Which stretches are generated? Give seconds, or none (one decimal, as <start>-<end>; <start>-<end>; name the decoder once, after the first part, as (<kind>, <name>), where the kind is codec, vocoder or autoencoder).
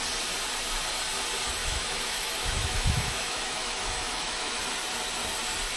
1.6-4.6 (autoencoder, DAC-VAE)